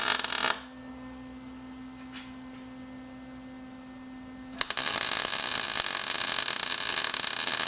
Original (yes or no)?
yes